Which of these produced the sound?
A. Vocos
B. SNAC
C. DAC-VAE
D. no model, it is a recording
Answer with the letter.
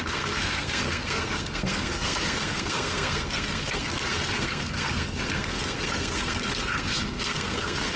B